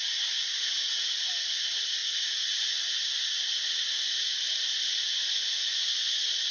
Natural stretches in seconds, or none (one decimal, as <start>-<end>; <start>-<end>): 0.0-0.4; 1.3-2.0; 2.7-6.5